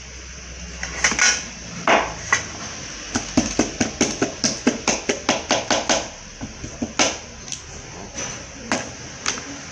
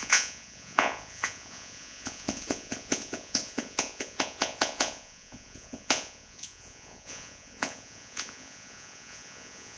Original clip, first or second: first